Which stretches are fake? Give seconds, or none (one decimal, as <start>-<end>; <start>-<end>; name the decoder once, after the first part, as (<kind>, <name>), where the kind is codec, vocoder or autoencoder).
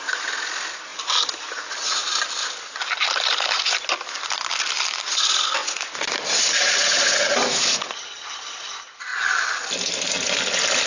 0.9-1.6 (vocoder, BigVGAN v2)